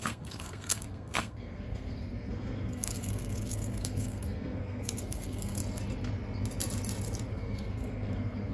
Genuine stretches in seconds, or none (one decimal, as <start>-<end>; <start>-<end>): 5.6-7.3